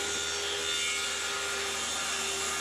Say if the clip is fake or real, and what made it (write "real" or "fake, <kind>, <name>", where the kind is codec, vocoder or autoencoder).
real